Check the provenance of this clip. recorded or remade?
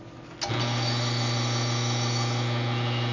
recorded